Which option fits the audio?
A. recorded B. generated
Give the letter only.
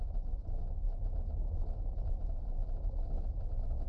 A